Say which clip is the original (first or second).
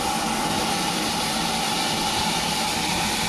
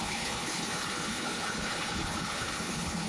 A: first